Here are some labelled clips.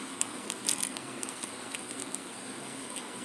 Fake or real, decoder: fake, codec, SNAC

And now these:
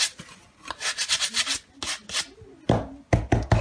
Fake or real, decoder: real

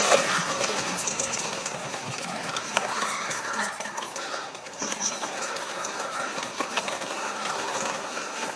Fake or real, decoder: fake, codec, SNAC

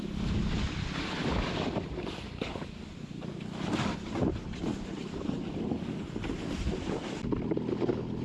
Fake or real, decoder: real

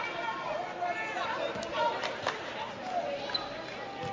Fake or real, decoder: real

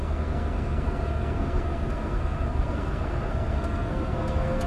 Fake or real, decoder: fake, codec, SNAC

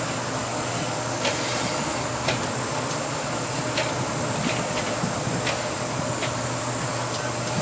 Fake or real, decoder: real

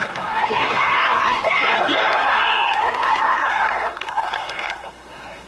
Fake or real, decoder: fake, codec, SNAC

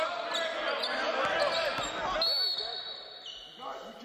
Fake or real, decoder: real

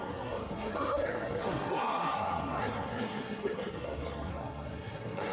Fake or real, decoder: fake, codec, SNAC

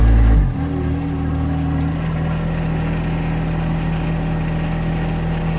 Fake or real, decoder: real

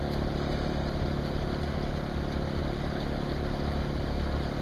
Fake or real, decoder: real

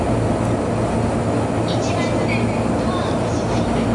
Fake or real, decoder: real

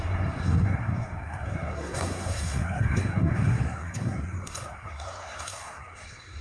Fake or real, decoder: fake, codec, SNAC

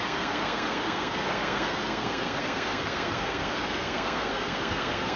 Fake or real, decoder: fake, codec, SNAC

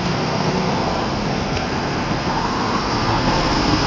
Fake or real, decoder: fake, codec, SNAC